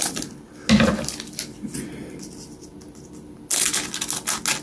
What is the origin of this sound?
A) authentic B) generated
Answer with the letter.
A